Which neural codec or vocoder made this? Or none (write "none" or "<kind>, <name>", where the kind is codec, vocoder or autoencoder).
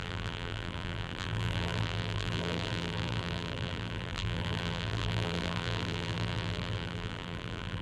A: vocoder, BigVGAN v2